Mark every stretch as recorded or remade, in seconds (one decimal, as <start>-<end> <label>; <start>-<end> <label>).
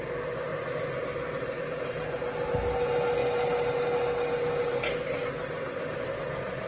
0.0-6.7 recorded